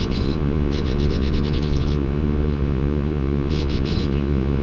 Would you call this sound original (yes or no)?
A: no